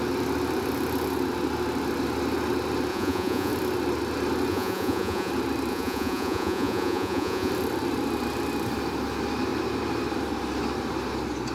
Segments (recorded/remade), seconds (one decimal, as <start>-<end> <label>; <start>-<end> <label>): 0.0-2.9 recorded; 2.9-3.5 remade; 3.5-4.5 recorded; 4.5-5.3 remade; 5.3-5.7 recorded; 5.7-7.5 remade; 7.5-11.5 recorded